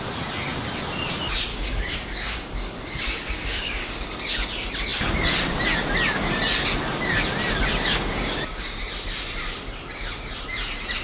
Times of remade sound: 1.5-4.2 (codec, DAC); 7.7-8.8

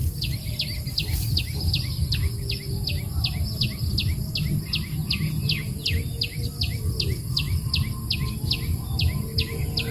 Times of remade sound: none

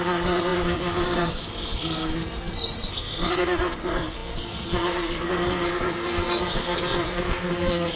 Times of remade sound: 0.0-8.0 (codec, SNAC)

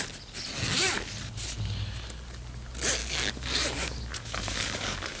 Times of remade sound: 3.0-5.2 (codec, DAC)

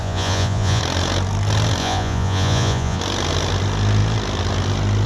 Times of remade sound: 0.0-0.8 (vocoder, Vocos); 1.8-3.0